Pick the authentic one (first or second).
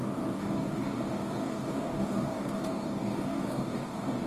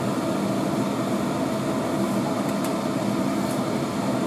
second